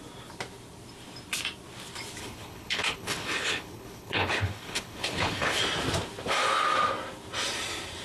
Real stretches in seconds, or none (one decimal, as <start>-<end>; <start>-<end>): 0.0-2.2; 5.6-8.0